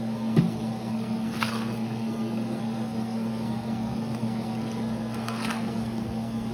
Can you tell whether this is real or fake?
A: fake